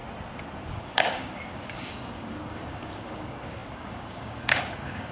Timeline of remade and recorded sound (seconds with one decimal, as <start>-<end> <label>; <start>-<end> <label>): 0.0-0.7 recorded; 0.7-5.1 remade